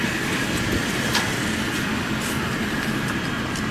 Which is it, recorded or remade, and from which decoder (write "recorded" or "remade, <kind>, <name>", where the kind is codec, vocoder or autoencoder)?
recorded